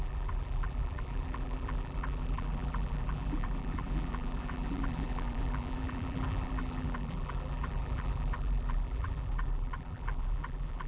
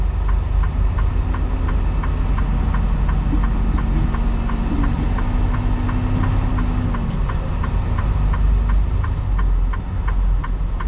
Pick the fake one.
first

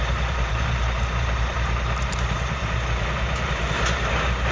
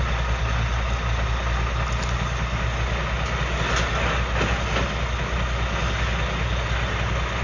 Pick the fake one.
first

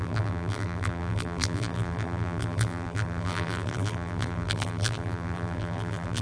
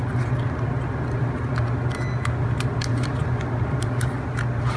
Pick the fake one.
first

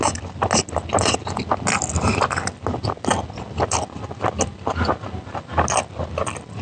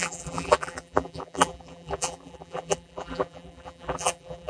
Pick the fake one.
second